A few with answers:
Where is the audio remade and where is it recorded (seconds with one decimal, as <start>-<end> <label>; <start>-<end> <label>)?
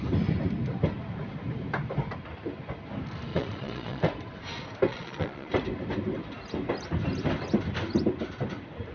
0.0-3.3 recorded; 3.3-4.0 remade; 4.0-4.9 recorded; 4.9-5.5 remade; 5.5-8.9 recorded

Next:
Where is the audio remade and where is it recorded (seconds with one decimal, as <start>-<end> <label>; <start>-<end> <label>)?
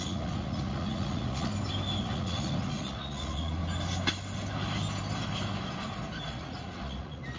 0.0-1.5 remade; 1.5-2.0 recorded; 2.0-3.6 remade; 3.6-6.3 recorded; 6.3-7.4 remade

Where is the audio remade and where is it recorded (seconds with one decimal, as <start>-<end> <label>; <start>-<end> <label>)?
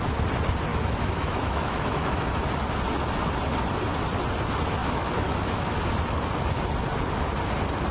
0.0-0.7 recorded; 0.7-2.2 remade; 2.2-4.8 recorded; 4.8-5.8 remade; 5.8-7.9 recorded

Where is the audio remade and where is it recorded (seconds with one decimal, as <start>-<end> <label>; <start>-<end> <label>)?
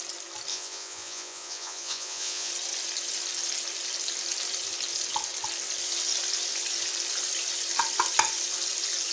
0.0-0.5 recorded; 0.5-2.5 remade; 2.5-9.1 recorded